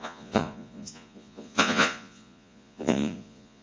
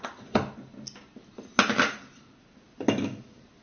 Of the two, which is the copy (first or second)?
first